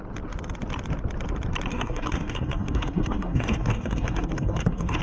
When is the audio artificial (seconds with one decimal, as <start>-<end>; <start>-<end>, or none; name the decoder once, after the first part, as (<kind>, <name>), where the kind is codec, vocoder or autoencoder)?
1.7-5.0 (codec, SNAC)